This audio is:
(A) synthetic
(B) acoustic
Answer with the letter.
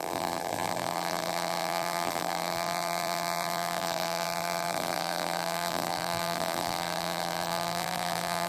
A